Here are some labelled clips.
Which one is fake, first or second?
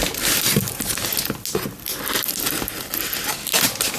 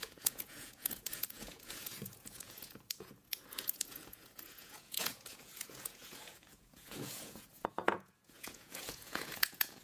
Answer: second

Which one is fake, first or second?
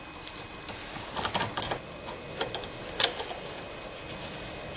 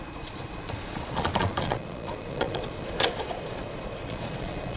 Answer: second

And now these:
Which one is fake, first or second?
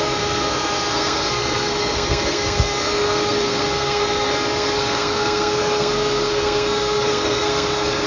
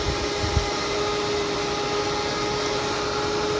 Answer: first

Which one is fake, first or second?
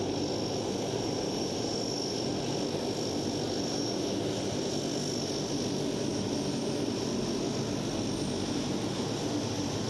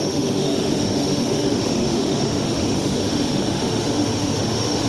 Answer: second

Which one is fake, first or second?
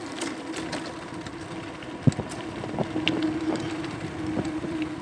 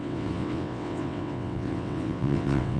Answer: second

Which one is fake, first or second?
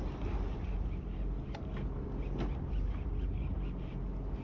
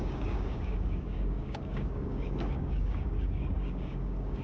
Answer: second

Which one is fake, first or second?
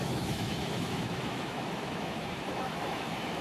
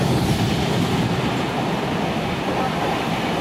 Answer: first